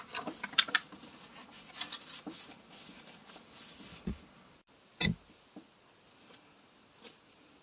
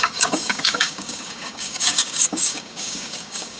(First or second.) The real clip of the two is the first